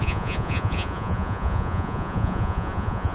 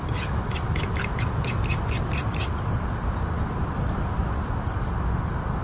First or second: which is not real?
first